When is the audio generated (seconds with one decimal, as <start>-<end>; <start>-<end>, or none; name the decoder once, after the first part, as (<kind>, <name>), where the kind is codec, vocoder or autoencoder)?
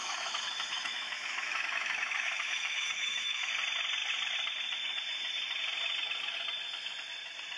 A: 0.0-3.5 (autoencoder, DAC-VAE)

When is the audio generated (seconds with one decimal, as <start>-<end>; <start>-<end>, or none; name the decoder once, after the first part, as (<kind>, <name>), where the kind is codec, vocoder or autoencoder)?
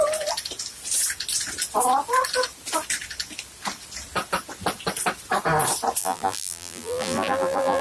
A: 6.0-7.8 (vocoder, BigVGAN v2)